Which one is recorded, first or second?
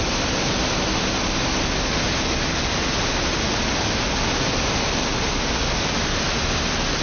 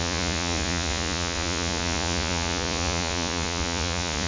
first